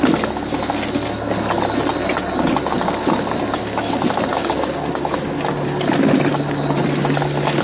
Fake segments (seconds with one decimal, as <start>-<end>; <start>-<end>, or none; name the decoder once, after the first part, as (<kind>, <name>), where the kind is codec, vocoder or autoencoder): 4.3-5.3 (codec, DAC)